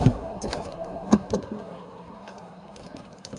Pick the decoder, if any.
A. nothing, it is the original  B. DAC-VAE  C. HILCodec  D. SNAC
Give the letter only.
D